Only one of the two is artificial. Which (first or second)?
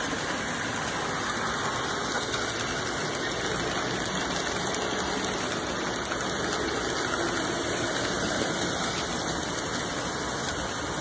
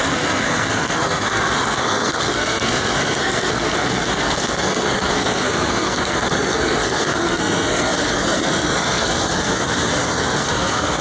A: second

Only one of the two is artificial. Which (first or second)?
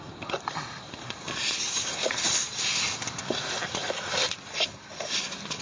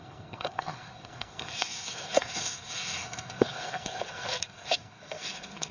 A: second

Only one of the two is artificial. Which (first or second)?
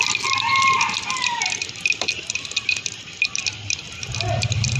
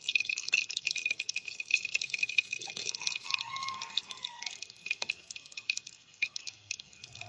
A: second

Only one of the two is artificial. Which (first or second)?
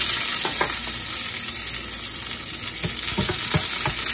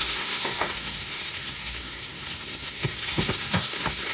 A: second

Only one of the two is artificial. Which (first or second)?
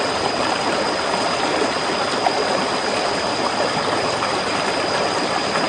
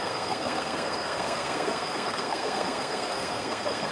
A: second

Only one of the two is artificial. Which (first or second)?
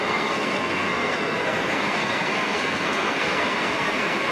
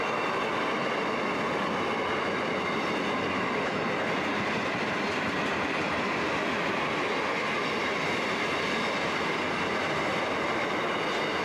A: first